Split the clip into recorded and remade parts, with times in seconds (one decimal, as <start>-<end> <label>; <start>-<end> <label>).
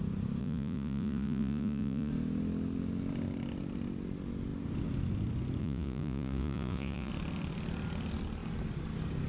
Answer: 0.0-0.4 recorded; 0.4-2.1 remade; 2.1-5.6 recorded; 5.6-7.1 remade; 7.1-9.3 recorded